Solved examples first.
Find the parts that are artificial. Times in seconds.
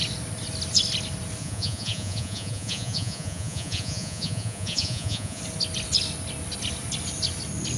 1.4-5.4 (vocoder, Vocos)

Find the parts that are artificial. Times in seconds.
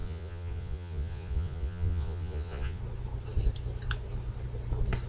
0.0-2.8 (vocoder, Vocos)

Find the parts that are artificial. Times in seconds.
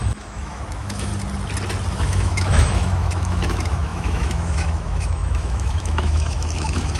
0.0-1.1 (autoencoder, DAC-VAE); 1.9-7.0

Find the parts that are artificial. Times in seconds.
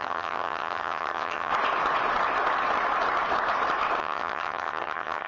0.0-1.5 (vocoder, HiFi-GAN); 4.0-5.3